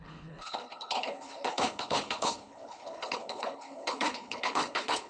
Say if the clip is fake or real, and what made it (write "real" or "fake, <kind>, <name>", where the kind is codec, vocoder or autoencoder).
fake, codec, HILCodec